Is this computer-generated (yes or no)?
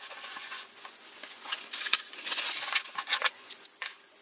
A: yes